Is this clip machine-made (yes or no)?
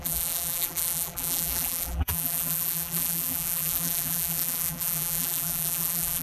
yes